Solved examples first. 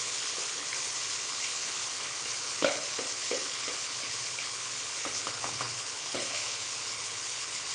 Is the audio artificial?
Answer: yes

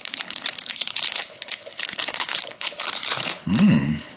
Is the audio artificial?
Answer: yes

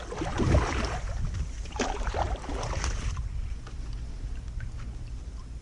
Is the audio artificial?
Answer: no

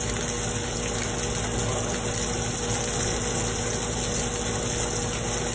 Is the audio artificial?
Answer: no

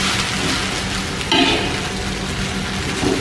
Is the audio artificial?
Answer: no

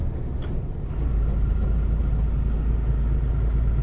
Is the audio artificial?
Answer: no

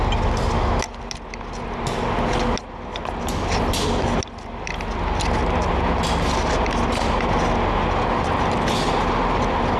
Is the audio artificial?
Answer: no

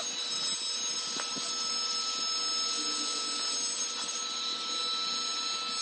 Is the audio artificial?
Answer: no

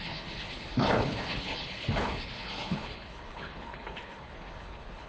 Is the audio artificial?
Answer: yes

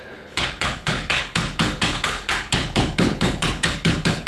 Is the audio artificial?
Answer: yes